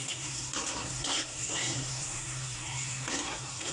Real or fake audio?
fake